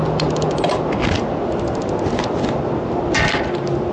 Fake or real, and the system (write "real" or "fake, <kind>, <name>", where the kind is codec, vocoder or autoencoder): real